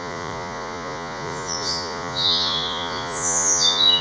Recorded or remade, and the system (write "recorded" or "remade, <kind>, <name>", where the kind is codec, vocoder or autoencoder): remade, vocoder, Vocos